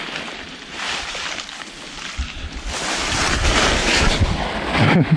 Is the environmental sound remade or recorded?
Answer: remade